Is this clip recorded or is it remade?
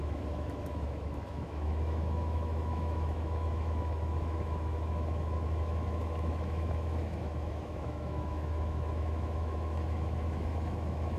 remade